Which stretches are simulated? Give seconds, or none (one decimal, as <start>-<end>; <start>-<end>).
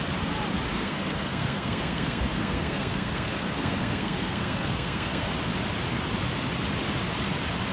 0.7-5.3